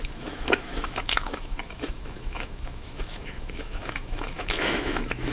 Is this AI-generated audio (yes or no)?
yes